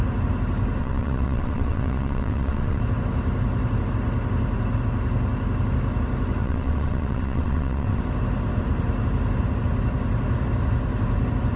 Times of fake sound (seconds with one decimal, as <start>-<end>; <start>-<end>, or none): 0.8-2.8; 6.4-8.0